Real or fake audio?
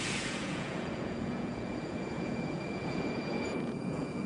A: fake